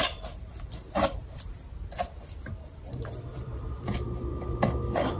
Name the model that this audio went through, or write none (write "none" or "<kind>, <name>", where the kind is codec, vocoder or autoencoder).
vocoder, BigVGAN v2